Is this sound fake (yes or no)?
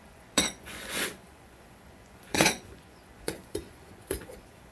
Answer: yes